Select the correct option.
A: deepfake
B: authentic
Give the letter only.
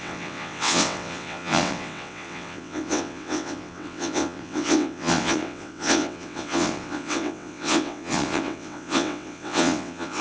A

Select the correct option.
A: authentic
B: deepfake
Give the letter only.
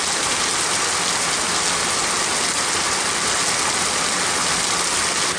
A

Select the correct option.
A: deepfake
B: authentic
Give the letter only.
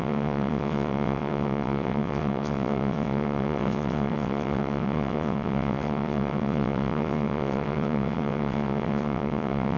A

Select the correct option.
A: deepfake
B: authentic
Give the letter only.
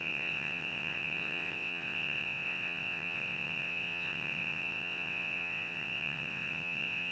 A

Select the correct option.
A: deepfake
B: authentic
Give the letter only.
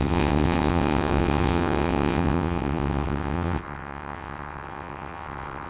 A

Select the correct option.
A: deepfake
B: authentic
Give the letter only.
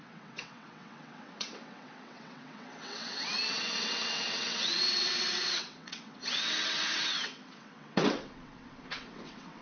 A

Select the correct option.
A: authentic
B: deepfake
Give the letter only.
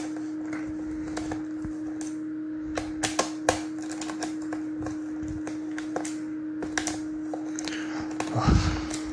A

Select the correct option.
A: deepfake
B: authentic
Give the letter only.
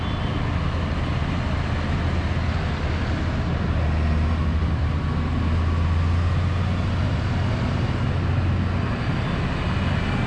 B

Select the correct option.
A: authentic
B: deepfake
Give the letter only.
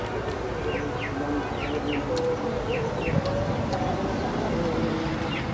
A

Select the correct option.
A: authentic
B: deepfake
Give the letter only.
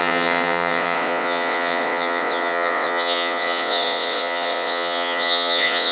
B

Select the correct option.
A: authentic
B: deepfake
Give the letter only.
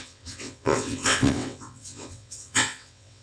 B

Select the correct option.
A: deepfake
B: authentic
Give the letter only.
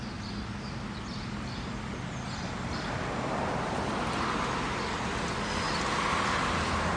B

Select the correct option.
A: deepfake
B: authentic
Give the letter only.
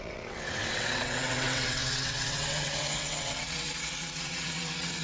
A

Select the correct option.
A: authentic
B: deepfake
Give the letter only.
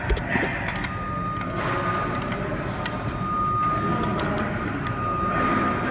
A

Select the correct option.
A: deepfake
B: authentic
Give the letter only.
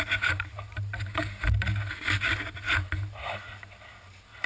B